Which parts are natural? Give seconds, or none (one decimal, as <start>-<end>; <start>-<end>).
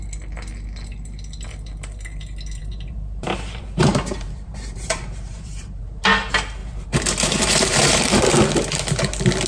0.0-2.6; 6.0-6.6; 8.2-9.5